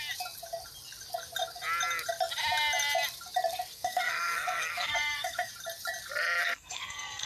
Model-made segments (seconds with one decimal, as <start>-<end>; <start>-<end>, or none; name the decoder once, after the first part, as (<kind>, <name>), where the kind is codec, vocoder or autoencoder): 3.7-5.5 (codec, SNAC); 6.4-7.3